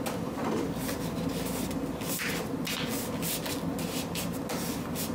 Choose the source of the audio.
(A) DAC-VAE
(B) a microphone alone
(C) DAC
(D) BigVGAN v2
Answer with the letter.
B